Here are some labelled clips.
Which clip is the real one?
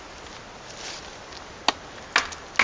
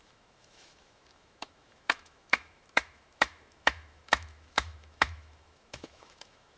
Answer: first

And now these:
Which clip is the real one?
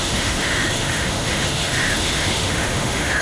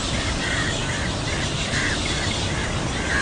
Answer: second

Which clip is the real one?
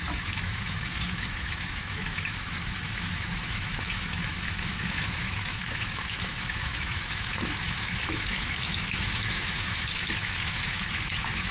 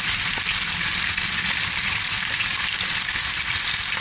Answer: second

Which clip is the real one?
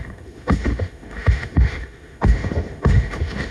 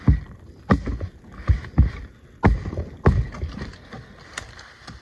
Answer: second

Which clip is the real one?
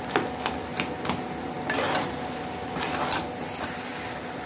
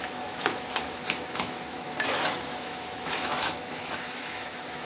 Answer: first